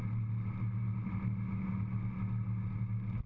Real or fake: real